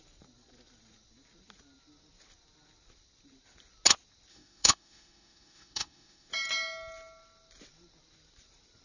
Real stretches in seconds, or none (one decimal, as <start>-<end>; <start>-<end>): 0.0-4.3; 6.3-8.8